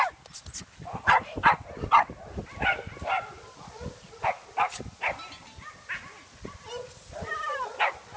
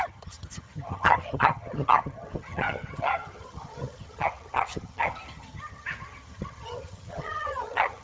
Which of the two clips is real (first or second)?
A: first